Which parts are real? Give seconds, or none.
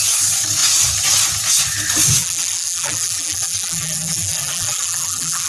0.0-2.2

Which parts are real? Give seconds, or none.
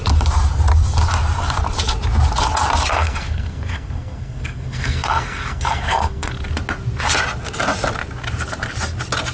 0.0-2.9; 6.3-9.3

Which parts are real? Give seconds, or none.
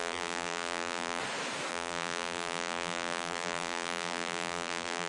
1.2-1.7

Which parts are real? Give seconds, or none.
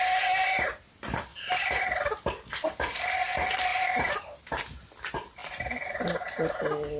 0.0-1.3; 2.8-3.7; 4.5-7.0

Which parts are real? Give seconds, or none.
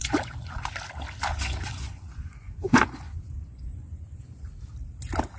0.7-1.3; 4.5-5.4